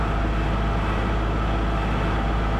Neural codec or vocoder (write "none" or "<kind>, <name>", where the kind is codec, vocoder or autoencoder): none